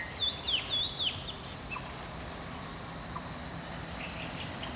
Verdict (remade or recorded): recorded